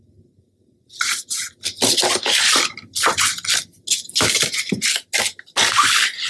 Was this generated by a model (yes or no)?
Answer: no